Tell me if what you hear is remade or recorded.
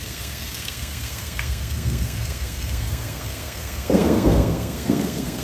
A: remade